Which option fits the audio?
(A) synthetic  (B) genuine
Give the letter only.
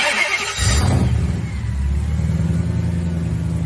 B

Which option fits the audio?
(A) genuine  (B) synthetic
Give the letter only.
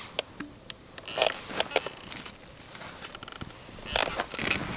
A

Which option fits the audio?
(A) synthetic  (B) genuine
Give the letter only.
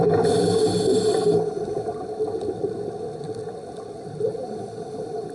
B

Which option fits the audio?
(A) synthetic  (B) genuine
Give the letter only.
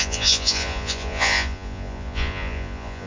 A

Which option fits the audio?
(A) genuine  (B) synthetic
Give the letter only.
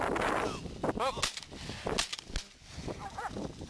A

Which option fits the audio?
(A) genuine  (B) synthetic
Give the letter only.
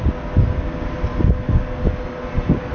A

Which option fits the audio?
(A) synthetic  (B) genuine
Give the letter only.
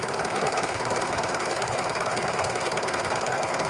A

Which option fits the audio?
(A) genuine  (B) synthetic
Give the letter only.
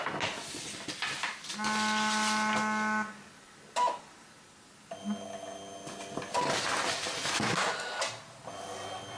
A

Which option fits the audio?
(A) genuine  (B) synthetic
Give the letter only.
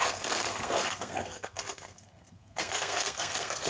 B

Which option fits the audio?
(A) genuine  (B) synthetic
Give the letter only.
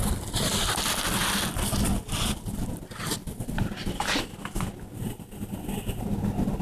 A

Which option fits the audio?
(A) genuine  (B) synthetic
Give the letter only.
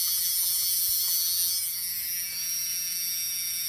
B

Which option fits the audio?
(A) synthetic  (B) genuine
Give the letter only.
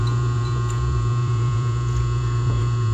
A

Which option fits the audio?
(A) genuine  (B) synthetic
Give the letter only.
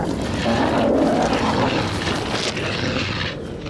A